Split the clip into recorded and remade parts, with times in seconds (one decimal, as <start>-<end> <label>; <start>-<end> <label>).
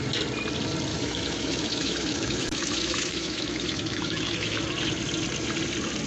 0.0-0.9 recorded; 0.9-4.6 remade; 4.6-6.1 recorded